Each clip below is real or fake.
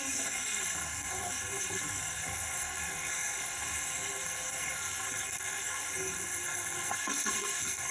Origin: fake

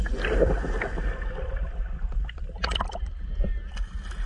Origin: real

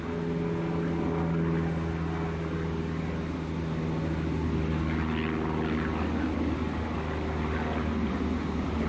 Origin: real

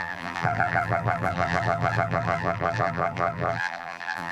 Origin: fake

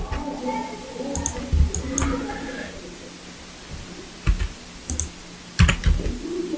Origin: real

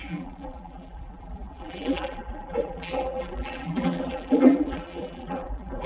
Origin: fake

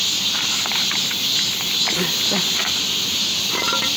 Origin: real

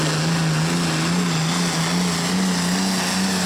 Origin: real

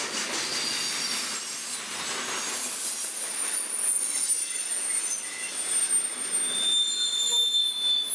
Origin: real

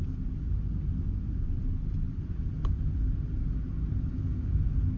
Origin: real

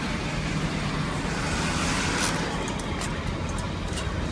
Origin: real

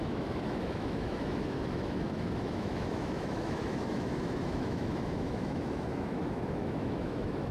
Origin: fake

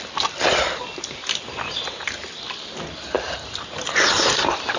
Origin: real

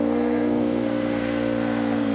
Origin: fake